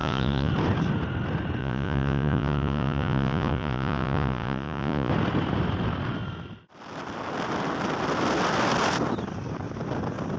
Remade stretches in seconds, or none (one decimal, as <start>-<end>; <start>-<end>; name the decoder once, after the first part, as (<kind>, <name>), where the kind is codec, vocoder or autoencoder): 0.0-0.5 (vocoder, Vocos); 1.6-5.1